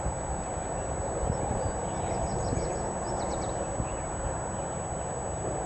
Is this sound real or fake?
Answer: real